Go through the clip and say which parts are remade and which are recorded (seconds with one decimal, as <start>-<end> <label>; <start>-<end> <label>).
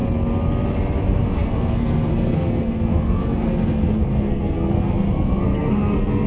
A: 0.0-1.0 recorded; 1.0-6.3 remade